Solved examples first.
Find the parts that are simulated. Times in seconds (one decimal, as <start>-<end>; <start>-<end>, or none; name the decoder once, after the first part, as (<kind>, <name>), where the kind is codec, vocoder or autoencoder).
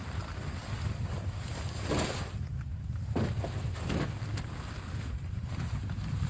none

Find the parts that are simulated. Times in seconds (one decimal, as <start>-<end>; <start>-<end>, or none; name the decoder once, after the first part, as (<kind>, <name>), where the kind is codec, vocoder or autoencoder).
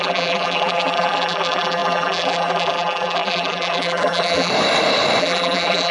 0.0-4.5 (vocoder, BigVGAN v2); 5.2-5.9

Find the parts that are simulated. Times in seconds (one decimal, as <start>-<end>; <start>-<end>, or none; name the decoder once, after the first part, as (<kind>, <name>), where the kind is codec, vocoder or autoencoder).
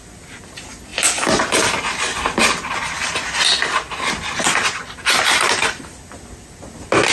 none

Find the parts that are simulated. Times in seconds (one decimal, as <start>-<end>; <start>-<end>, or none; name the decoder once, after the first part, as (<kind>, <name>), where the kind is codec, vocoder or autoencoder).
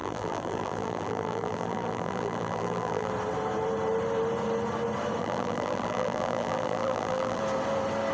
0.0-3.1 (vocoder, BigVGAN v2); 5.2-7.4